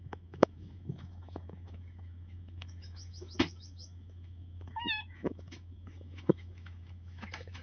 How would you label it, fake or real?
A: fake